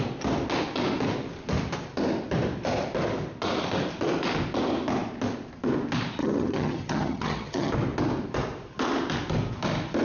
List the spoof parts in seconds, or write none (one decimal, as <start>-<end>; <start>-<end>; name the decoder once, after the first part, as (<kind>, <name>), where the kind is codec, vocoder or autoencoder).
6.2-7.7 (vocoder, HiFi-GAN)